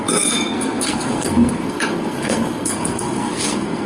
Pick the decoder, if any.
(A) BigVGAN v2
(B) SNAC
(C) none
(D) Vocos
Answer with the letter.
B